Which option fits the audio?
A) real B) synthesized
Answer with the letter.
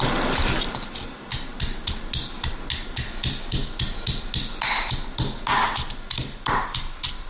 A